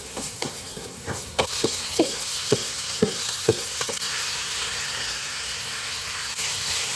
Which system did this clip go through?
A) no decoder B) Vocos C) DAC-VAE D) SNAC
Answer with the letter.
D